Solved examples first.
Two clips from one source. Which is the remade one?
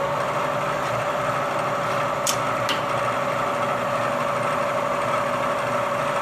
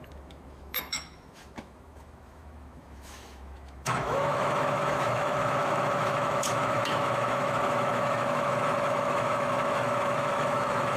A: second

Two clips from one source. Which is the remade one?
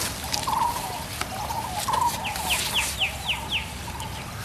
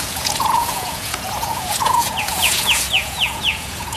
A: second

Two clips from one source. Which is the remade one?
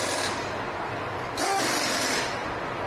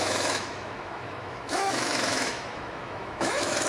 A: second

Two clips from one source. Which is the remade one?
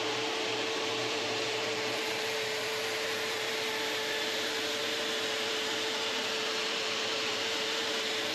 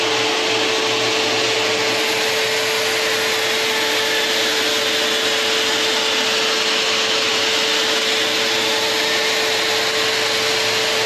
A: first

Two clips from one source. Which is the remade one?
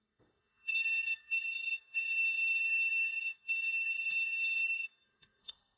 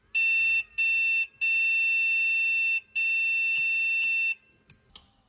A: first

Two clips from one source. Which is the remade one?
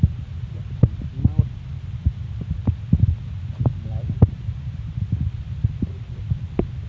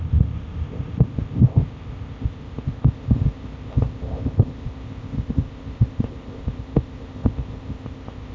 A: second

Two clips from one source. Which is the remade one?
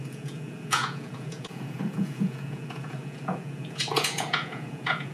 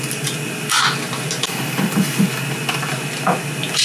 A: first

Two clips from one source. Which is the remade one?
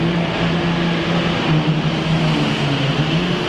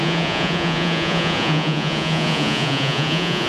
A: second